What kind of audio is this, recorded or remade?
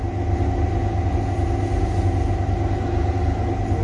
recorded